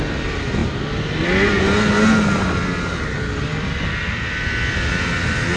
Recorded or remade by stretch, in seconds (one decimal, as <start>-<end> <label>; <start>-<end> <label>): 0.0-5.6 recorded

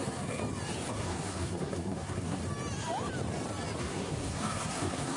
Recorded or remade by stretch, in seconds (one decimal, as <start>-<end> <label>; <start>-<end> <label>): 0.0-0.4 remade; 0.4-0.9 recorded; 0.9-2.4 remade; 2.4-3.8 recorded; 3.8-5.2 remade

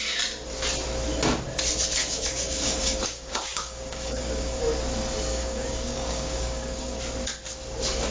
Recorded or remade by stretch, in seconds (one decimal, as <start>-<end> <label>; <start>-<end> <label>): 0.0-2.0 recorded; 2.0-4.6 remade; 4.6-5.3 recorded; 5.3-7.0 remade; 7.0-8.1 recorded

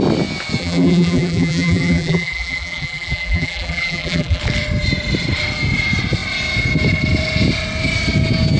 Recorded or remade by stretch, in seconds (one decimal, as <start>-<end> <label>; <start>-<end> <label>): 0.0-0.6 recorded; 0.6-4.4 remade; 4.4-8.6 recorded

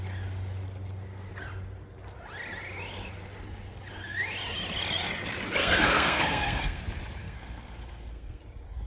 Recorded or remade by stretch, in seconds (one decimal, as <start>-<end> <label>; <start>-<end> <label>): 0.0-5.6 recorded; 5.6-6.8 remade; 6.8-7.2 recorded; 7.2-8.4 remade; 8.4-8.9 recorded

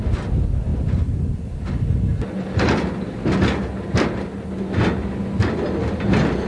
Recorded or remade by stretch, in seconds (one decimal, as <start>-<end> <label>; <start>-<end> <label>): 0.0-6.5 recorded

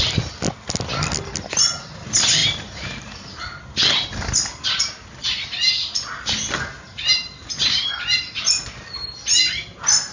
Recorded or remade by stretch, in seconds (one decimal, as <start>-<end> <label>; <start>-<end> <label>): 0.0-2.4 recorded; 2.4-3.6 remade; 3.6-6.9 recorded; 6.9-8.2 remade; 8.2-10.1 recorded